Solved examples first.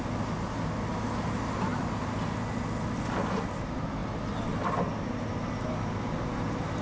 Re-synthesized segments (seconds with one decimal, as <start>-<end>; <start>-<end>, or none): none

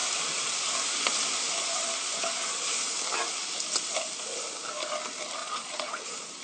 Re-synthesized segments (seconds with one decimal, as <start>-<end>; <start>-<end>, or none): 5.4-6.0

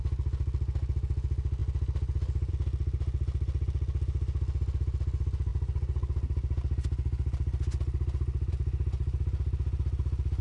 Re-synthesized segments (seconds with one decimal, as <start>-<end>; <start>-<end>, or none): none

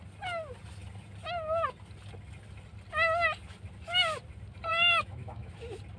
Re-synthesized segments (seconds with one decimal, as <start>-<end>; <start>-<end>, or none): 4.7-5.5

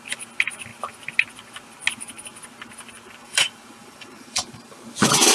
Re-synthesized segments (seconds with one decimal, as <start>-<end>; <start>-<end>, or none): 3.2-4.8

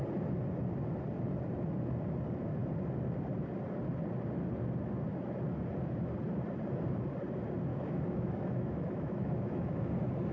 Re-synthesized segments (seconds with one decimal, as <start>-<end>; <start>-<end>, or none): 7.7-9.9

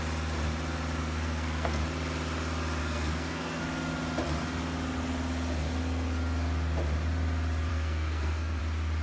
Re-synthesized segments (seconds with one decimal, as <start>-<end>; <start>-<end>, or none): 1.0-1.8; 2.8-3.6; 7.7-8.6